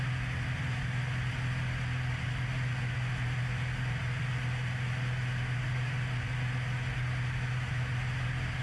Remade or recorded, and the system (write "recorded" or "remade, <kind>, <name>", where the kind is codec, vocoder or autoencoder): recorded